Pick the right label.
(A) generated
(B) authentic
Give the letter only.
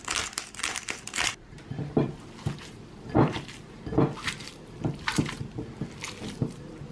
A